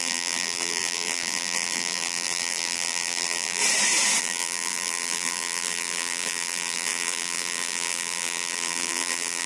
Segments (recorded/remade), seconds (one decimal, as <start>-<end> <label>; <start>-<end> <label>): 0.0-3.6 remade; 3.6-4.2 recorded; 4.2-9.5 remade